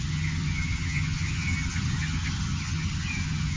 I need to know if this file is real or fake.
fake